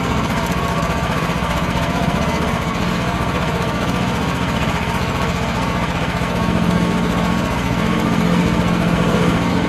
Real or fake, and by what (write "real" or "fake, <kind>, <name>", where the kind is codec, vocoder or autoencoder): fake, codec, SNAC